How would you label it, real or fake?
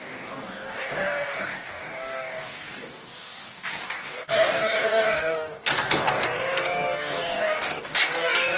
fake